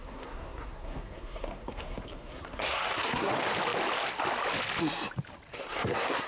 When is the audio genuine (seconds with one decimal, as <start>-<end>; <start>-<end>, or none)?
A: 3.3-5.5